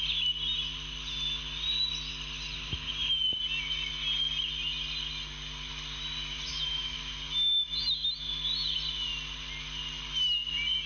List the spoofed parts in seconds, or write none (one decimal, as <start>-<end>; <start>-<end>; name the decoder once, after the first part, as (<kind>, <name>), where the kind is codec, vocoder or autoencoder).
6.5-7.0 (autoencoder, DAC-VAE)